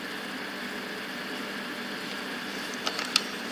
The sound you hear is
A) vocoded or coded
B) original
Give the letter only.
B